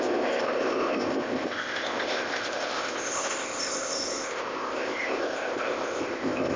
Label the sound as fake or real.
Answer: fake